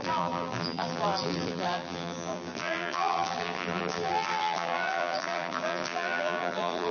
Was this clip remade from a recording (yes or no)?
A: yes